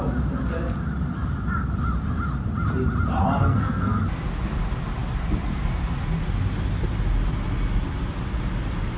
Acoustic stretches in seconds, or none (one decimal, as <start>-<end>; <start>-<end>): 0.0-3.4; 4.0-9.0